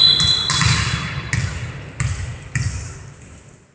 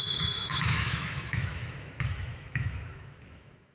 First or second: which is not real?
second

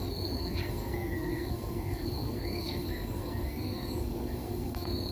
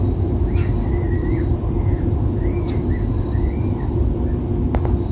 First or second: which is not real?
first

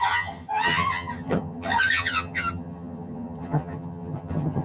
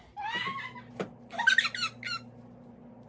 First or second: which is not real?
first